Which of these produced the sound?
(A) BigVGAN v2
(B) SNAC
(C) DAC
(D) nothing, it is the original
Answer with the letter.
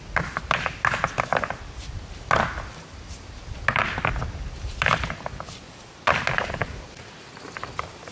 D